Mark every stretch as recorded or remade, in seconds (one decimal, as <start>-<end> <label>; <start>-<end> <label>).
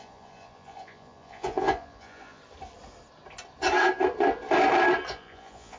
0.0-2.4 remade; 2.4-5.1 recorded; 5.1-5.8 remade